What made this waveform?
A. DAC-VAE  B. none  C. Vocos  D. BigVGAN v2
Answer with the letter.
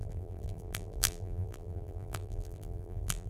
D